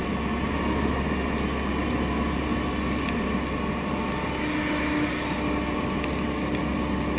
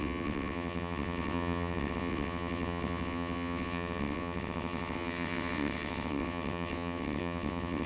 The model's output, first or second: second